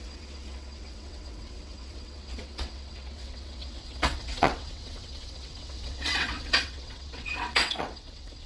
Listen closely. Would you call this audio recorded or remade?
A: remade